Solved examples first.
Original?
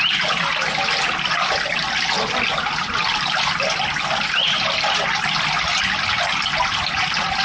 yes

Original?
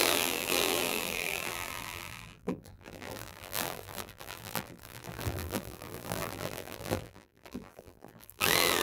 no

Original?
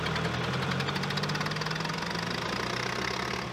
yes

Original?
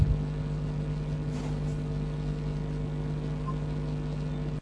yes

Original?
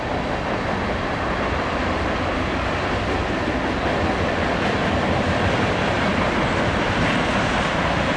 yes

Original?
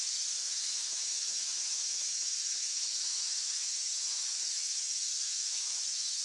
no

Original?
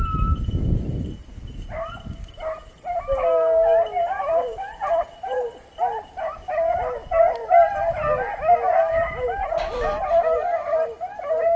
yes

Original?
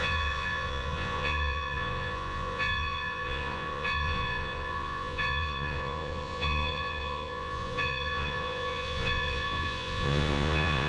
no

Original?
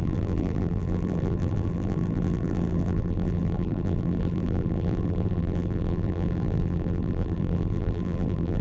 no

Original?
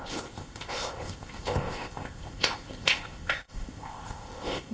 no